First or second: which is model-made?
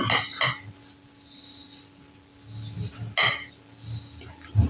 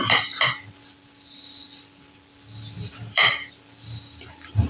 second